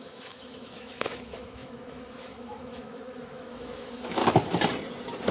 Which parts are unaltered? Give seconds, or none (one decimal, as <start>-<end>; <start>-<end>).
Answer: 4.2-5.3